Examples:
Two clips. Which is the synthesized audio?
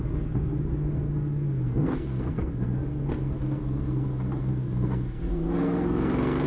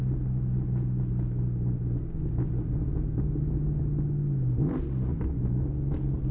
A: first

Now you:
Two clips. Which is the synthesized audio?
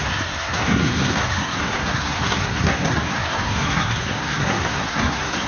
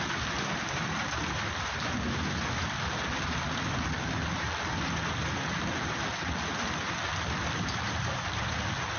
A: first